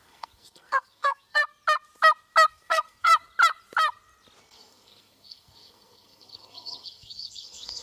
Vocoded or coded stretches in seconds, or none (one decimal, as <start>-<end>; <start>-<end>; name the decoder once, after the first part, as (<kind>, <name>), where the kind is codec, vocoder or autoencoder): 0.0-1.4 (codec, SNAC); 2.5-3.1; 4.4-7.8